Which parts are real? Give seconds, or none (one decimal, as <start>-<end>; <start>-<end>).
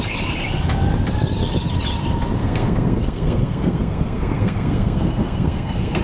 0.0-2.4